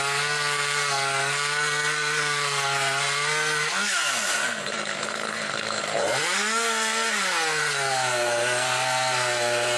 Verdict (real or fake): fake